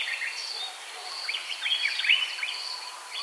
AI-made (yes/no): no